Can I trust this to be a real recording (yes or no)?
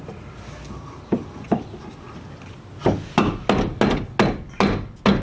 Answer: yes